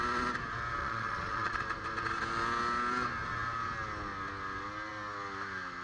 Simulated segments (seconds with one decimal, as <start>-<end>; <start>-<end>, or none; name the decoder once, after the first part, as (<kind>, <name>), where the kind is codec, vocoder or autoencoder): 0.8-1.6 (vocoder, Vocos)

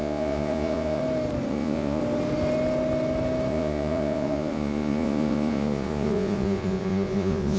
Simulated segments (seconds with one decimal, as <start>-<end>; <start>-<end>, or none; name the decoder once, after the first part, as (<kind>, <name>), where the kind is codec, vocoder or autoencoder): 0.0-1.0 (vocoder, Vocos); 1.5-2.0; 3.5-7.6

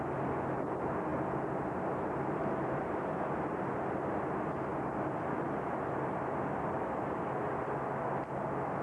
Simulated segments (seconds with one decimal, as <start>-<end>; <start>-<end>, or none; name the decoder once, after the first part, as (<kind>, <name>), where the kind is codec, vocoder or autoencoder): none

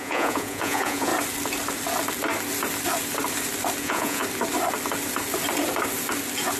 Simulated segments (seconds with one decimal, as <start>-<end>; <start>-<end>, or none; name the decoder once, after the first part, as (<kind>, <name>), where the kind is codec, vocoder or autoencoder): 0.0-1.1 (vocoder, Vocos); 3.8-4.2